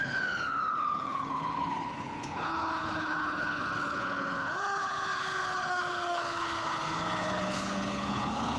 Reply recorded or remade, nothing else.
remade